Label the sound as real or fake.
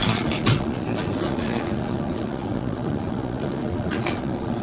fake